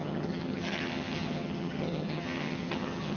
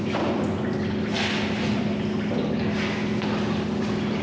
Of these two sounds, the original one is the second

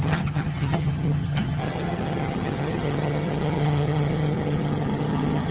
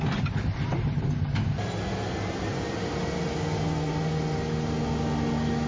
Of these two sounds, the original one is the second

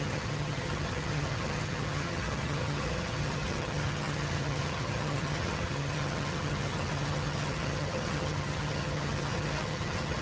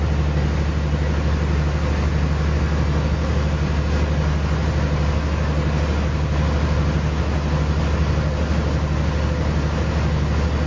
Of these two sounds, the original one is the second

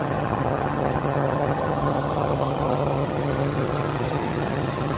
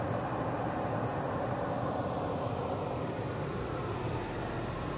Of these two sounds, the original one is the second